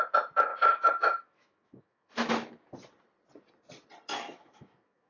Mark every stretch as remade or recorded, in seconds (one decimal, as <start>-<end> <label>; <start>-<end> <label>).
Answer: 0.0-0.5 recorded; 0.5-2.3 remade; 2.3-4.1 recorded; 4.1-5.1 remade